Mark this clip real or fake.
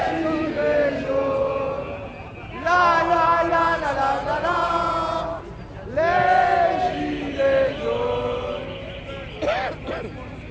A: real